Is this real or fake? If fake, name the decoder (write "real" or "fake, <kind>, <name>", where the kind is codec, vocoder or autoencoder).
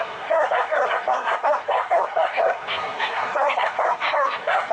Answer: fake, codec, SNAC